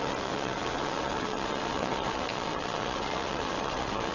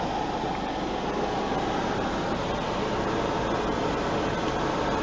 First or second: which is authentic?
second